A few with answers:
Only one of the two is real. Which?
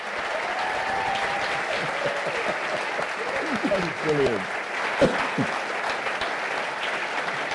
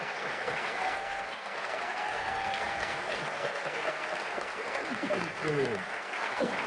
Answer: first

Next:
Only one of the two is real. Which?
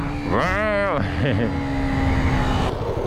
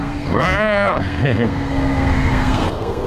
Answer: first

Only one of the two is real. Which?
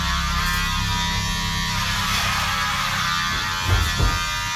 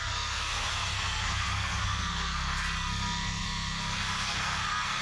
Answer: first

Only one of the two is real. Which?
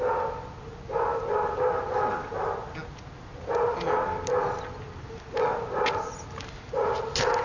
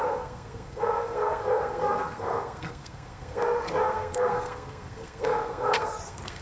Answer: first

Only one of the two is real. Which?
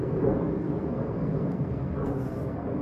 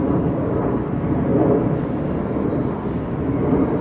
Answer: second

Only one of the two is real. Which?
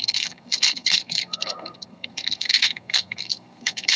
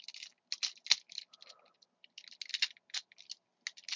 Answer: second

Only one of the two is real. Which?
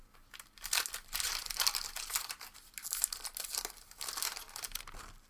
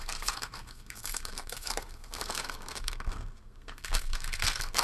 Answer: first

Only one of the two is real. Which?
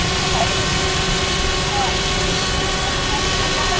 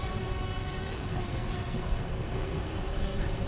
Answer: first